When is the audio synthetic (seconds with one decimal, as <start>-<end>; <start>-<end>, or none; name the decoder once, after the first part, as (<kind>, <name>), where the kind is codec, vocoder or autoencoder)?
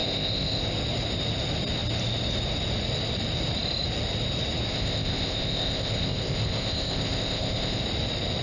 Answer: 0.0-0.6 (codec, ZipCodec); 4.7-7.8